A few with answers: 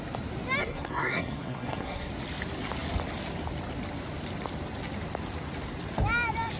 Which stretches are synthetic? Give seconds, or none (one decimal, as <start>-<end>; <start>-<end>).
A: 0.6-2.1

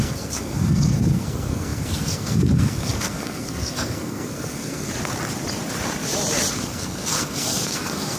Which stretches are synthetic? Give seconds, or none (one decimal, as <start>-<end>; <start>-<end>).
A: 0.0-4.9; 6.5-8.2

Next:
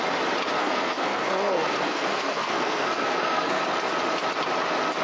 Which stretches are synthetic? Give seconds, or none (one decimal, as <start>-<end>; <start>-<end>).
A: 0.6-3.6